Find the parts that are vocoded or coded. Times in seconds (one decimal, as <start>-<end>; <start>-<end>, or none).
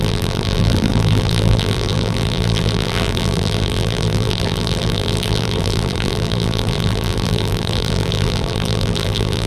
0.0-9.5